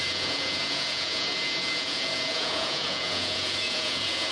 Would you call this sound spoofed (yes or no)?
yes